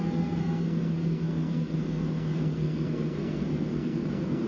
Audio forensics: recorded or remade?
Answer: remade